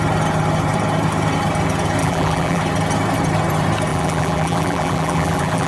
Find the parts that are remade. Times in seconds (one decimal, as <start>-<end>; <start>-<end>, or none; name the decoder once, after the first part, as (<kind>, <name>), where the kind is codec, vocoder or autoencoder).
2.0-2.6 (vocoder, BigVGAN v2); 3.9-5.7